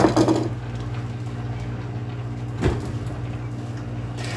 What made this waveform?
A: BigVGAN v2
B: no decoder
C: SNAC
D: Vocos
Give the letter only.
B